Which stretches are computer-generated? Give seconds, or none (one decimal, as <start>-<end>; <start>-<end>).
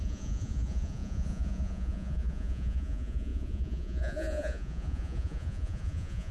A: 0.0-6.3